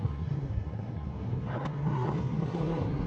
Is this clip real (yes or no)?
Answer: no